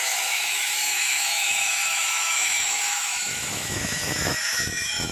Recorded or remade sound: remade